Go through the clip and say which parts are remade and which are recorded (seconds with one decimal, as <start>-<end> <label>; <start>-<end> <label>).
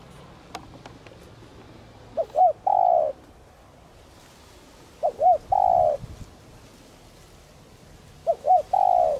0.0-8.2 recorded; 8.2-8.7 remade; 8.7-9.2 recorded